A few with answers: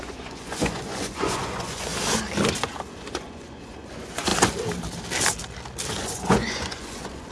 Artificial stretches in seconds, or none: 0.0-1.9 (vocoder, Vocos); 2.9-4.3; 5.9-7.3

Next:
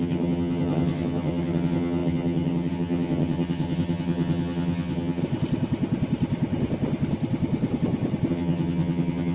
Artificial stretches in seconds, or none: 0.0-5.2 (vocoder, HiFi-GAN); 8.3-9.3

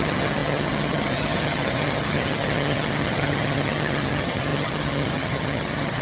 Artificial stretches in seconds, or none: 0.0-6.0 (vocoder, HiFi-GAN)

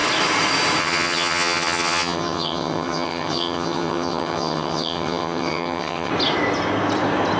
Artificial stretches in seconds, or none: 0.8-6.1 (vocoder, HiFi-GAN)

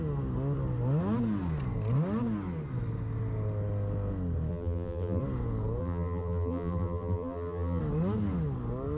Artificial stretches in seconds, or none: 4.5-5.2 (vocoder, BigVGAN v2); 5.8-7.8

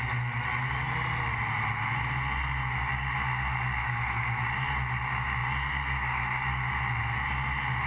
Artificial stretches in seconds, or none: 3.8-4.4 (autoencoder, DAC-VAE)

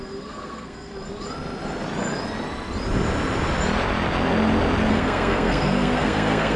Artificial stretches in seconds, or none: 0.0-0.9 (codec, SNAC); 4.9-6.6

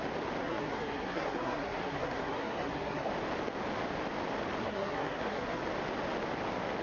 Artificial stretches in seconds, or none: 0.4-3.1 (codec, SNAC); 4.6-5.6